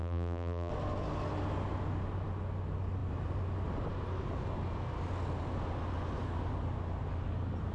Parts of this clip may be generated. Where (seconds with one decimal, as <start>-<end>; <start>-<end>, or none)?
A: 0.0-0.7